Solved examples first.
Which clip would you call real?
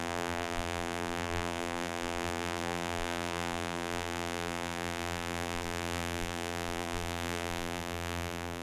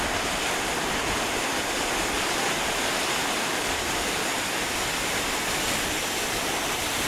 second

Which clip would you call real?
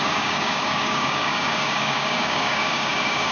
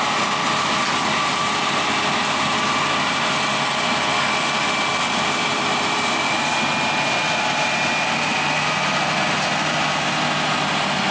second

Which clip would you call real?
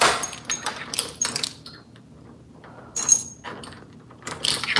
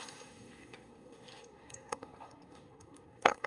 first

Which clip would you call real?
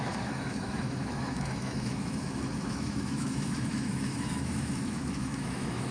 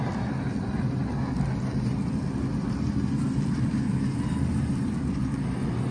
second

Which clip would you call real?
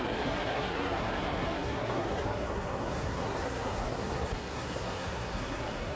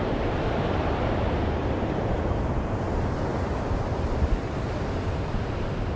second